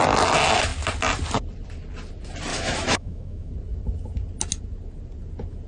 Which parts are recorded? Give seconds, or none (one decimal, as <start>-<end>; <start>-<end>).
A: 0.0-2.5; 3.5-5.7